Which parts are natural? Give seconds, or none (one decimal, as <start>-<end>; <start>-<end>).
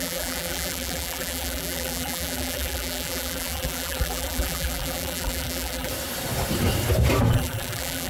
5.9-7.3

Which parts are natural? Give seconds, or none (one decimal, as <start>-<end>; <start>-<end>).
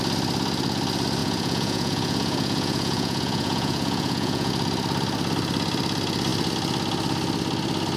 0.0-1.2; 4.5-8.0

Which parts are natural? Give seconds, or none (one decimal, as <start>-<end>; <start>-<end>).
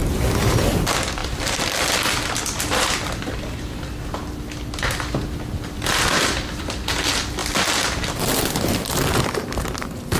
0.0-10.2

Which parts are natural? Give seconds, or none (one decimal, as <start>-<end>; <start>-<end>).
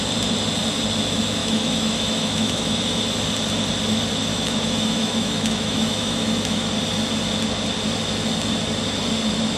0.0-1.4; 3.0-4.3; 6.7-9.6